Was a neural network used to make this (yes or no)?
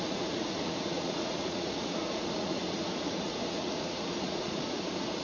yes